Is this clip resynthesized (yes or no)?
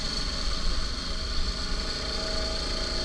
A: no